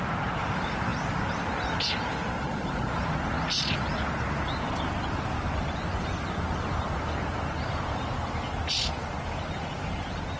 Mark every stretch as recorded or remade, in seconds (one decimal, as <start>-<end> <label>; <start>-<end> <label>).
0.0-10.4 recorded